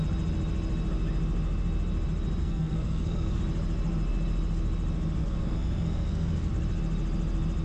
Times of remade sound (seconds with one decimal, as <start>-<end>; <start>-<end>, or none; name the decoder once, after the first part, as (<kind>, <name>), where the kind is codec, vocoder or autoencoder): 2.4-3.4 (codec, SNAC); 5.2-6.5